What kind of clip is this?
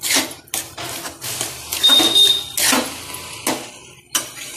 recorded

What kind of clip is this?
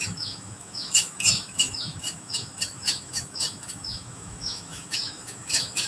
remade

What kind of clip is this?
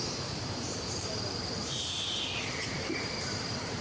remade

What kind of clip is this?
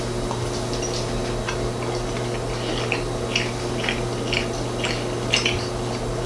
recorded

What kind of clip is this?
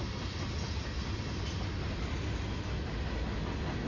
recorded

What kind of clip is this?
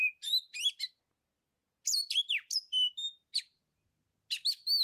recorded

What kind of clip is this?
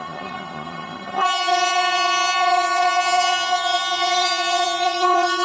remade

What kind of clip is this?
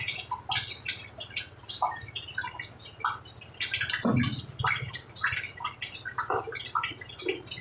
recorded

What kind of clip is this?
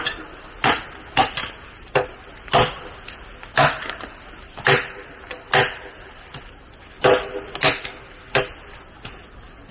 recorded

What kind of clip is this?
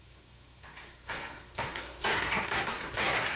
remade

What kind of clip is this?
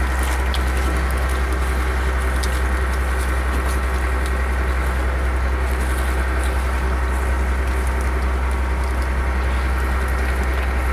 recorded